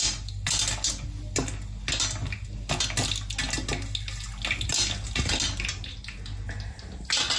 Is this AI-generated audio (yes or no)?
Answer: no